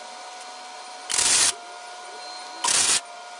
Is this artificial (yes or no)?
no